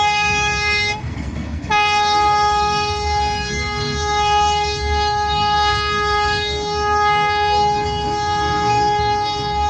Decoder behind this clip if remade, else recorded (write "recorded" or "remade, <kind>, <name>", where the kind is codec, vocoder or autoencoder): remade, codec, SNAC